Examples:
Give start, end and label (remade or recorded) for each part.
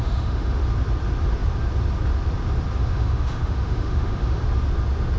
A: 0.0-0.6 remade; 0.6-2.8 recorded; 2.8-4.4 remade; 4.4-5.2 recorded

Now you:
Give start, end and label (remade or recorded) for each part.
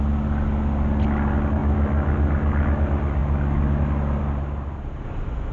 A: 0.0-5.5 recorded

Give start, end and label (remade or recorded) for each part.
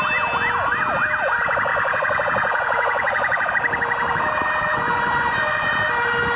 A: 0.0-1.7 recorded; 1.7-3.5 remade; 3.5-4.6 recorded; 4.6-5.7 remade; 5.7-6.4 recorded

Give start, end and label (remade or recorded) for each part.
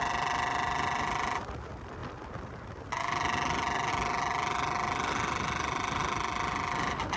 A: 0.0-7.2 recorded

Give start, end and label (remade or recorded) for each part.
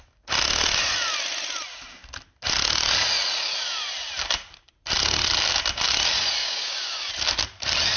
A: 0.0-6.4 recorded; 6.4-7.1 remade; 7.1-8.0 recorded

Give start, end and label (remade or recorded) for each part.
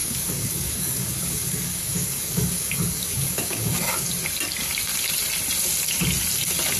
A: 0.0-4.1 remade; 4.1-6.8 recorded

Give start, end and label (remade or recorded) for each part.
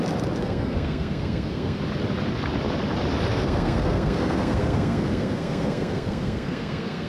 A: 0.0-0.4 recorded; 0.4-1.8 remade; 1.8-3.3 recorded; 3.3-7.1 remade